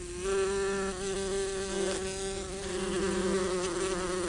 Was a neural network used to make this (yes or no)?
no